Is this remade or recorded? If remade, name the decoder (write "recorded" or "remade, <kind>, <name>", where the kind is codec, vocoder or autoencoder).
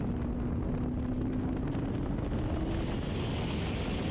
recorded